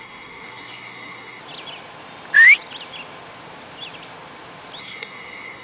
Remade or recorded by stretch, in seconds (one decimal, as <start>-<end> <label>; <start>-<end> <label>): 0.0-1.4 remade; 1.4-4.8 recorded; 4.8-5.6 remade